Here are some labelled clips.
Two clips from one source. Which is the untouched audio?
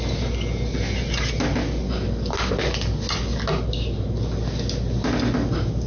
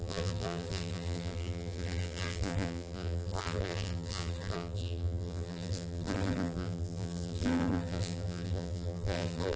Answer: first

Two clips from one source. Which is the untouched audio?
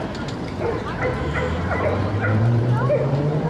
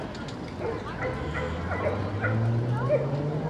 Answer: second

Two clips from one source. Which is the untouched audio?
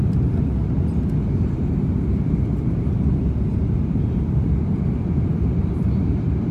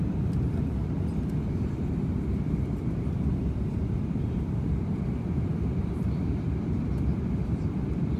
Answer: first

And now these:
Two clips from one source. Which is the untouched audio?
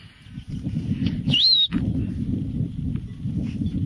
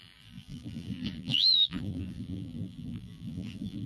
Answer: first